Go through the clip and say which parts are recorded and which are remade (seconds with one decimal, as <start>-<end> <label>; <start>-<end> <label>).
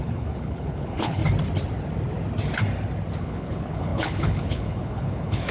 0.0-1.2 remade; 1.2-3.2 recorded; 3.2-5.5 remade